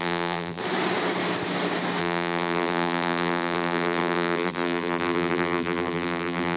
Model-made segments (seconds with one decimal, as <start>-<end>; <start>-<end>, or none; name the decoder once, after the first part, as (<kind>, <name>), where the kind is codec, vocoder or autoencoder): 0.0-0.6 (vocoder, BigVGAN v2); 2.0-6.6